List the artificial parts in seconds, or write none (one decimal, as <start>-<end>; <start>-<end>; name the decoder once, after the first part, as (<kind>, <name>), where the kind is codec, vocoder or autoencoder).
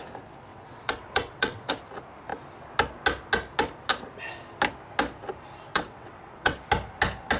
0.5-1.7 (vocoder, WaveNeXt); 5.7-6.6